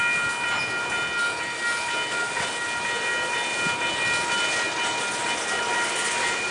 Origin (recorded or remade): recorded